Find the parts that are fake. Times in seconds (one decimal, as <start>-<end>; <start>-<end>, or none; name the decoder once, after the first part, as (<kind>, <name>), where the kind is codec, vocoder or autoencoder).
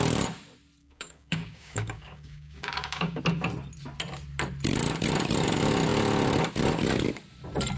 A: 0.8-3.2 (codec, DAC)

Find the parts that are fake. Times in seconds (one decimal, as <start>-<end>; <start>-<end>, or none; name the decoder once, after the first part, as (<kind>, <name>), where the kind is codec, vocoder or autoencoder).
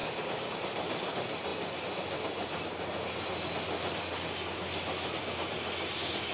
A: none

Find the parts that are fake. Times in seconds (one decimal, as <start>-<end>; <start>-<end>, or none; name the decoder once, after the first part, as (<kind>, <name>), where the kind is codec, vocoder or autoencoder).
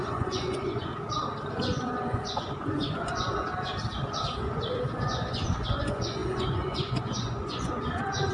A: 0.0-0.9 (vocoder, Vocos); 1.5-3.5; 4.4-8.3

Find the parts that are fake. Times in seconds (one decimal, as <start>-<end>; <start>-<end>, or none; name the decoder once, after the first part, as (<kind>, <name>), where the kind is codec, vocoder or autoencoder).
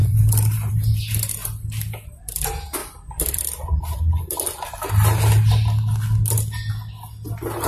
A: 0.0-0.7 (vocoder, BigVGAN v2); 2.8-3.8